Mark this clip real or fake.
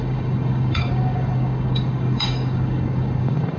fake